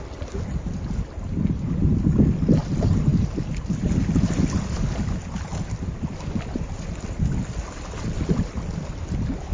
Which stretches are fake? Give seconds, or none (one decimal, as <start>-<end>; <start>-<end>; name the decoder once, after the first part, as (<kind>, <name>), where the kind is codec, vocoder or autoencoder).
none